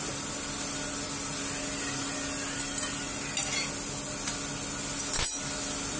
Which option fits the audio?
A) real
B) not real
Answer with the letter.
A